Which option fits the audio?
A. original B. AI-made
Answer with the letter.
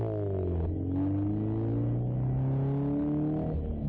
A